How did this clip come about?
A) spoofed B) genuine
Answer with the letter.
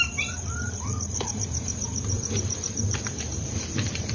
A